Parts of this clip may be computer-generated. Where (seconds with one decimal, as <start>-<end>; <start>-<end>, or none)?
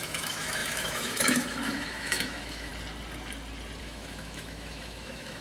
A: 0.0-2.7; 3.8-5.4